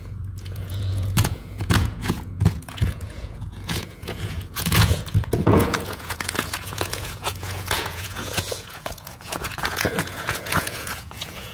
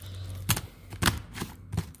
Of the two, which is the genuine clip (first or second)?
second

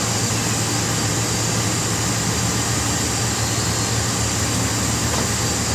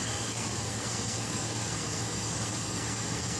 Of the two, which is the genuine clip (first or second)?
first